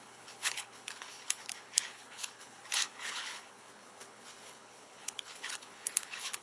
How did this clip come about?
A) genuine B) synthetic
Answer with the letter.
B